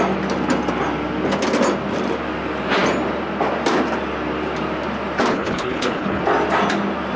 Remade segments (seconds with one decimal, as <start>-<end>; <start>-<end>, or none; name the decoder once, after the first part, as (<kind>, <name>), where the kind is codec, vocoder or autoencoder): 5.3-6.2 (codec, HILCodec)